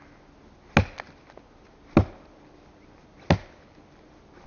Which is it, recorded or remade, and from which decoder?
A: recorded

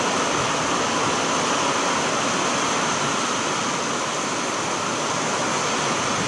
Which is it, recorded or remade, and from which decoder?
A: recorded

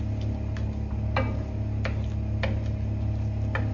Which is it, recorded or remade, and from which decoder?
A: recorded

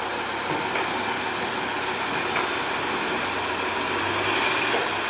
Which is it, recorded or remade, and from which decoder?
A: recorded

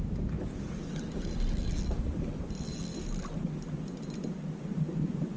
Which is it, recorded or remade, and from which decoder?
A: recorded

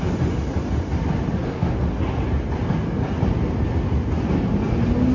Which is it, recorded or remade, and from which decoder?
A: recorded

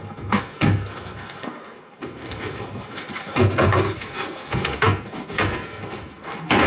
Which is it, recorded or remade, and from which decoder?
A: remade, codec, SNAC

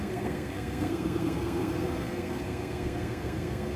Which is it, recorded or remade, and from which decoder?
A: remade, codec, SNAC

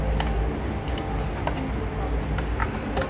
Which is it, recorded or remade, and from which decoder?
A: recorded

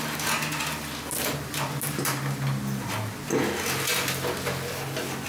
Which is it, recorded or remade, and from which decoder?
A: recorded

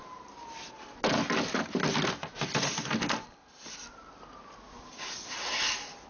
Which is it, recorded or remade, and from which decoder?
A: recorded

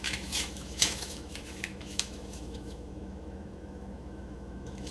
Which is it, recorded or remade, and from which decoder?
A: remade, autoencoder, DAC-VAE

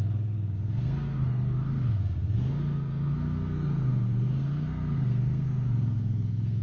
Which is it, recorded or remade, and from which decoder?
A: remade, codec, SNAC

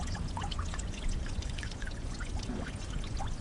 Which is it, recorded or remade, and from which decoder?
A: remade, vocoder, Vocos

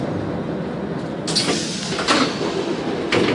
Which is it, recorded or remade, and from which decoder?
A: recorded